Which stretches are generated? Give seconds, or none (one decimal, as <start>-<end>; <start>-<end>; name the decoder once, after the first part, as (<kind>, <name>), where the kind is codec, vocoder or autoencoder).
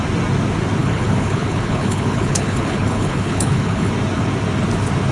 0.8-3.9 (codec, HILCodec)